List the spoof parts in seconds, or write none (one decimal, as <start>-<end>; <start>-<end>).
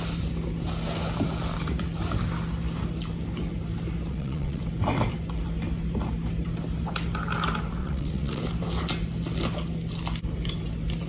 4.1-4.6; 7.8-8.4